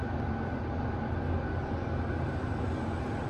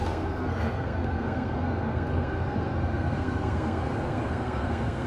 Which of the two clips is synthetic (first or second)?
second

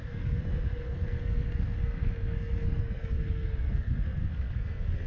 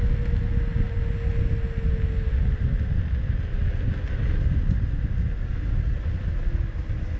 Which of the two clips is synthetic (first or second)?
first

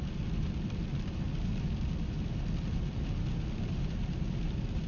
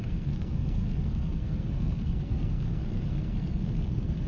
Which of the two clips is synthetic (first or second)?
second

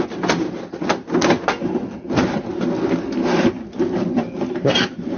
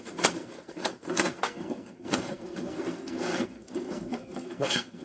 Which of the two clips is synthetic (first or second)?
second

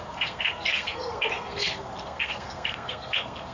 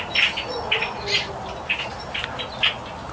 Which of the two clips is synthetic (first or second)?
first